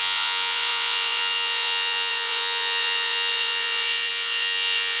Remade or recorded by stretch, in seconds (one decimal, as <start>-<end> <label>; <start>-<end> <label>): 0.0-5.0 remade